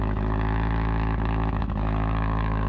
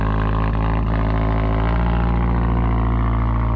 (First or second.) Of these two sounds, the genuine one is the second